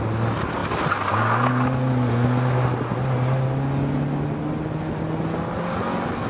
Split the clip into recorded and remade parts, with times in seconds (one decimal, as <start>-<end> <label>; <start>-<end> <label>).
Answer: 0.0-6.3 recorded